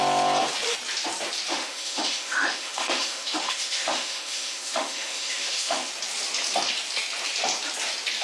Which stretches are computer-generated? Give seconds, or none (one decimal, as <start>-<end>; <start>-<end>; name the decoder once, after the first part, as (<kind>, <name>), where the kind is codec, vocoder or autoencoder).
1.5-5.9 (autoencoder, DAC-VAE)